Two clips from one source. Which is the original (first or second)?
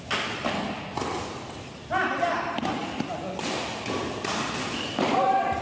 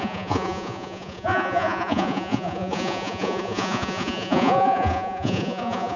first